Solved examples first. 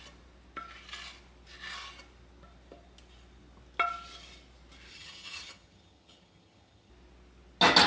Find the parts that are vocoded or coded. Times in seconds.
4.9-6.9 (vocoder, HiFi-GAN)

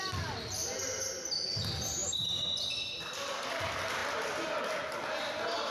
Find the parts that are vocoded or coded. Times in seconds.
none

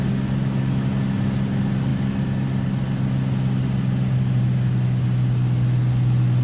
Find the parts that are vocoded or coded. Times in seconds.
none

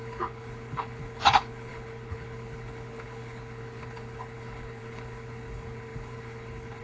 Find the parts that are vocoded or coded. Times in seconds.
0.0-6.8 (codec, HILCodec)